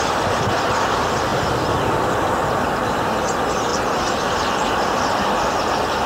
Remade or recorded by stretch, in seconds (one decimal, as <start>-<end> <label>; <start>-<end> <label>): 0.0-3.7 recorded; 3.7-5.0 remade; 5.0-6.1 recorded